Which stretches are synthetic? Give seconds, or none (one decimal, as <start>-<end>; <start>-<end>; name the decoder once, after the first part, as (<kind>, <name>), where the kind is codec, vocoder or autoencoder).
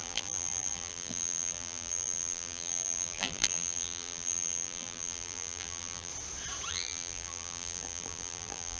0.0-6.1 (vocoder, BigVGAN v2); 6.7-8.8